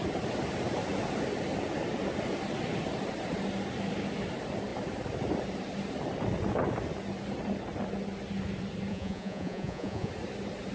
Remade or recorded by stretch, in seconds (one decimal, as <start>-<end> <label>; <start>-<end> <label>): 0.0-8.9 recorded; 8.9-10.1 remade; 10.1-10.7 recorded